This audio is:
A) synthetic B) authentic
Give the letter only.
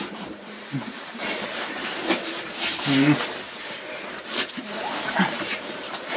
A